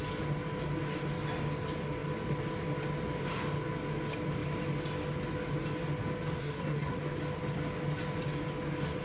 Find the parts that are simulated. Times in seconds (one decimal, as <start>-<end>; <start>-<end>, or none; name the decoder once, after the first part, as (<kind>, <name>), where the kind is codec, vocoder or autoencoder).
6.4-7.0 (codec, SNAC)